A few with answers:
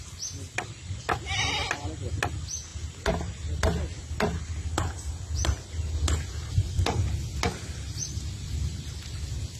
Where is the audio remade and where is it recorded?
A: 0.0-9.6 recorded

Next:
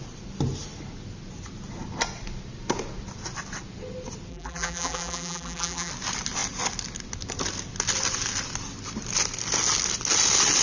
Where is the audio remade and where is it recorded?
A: 0.0-4.3 recorded; 4.3-5.9 remade; 5.9-10.6 recorded

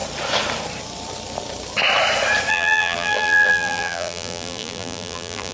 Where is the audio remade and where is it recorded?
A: 0.0-2.5 recorded; 2.5-5.5 remade